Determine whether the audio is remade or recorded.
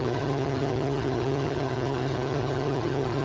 remade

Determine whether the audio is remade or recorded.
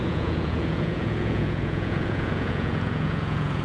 remade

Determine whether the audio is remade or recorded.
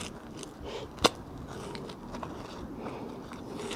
recorded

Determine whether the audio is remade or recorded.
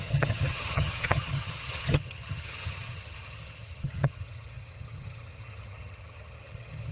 remade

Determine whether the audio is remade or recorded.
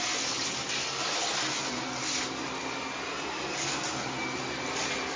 recorded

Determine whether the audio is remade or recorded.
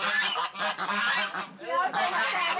recorded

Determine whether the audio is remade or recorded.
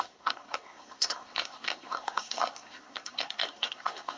remade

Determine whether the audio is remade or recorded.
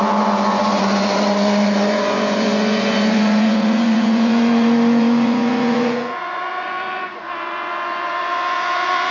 remade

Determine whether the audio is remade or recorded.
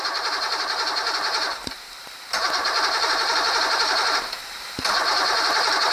remade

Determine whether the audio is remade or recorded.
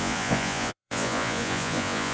remade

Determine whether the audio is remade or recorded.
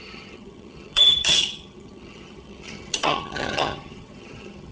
remade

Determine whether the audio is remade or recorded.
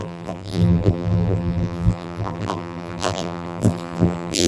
remade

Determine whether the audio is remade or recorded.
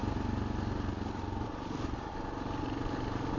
recorded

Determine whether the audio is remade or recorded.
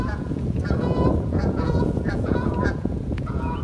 remade